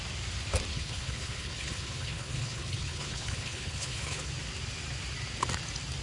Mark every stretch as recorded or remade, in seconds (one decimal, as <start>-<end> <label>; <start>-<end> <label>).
0.0-0.7 recorded; 0.7-4.3 remade; 4.3-6.0 recorded